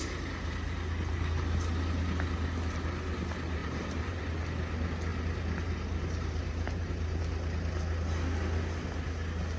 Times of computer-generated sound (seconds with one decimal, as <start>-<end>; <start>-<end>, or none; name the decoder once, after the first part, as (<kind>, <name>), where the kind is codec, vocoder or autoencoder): 3.6-4.2 (vocoder, BigVGAN v2); 5.1-7.2